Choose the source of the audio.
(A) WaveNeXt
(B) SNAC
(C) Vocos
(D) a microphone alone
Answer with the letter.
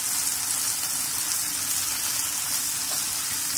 D